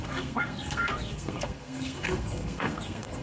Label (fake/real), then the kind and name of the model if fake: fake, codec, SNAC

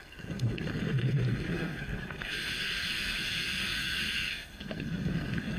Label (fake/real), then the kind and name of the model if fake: fake, codec, SNAC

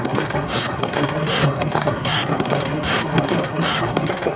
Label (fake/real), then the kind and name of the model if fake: fake, codec, SNAC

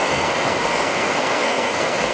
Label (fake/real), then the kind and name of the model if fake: fake, codec, SNAC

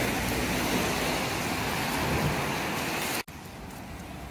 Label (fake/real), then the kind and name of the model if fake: real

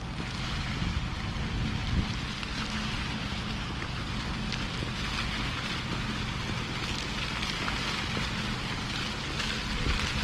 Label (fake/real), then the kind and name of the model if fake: real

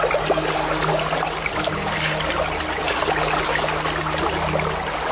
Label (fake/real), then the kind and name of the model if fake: real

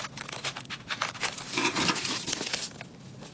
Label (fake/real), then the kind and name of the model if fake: real